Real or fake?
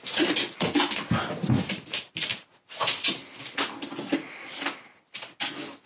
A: real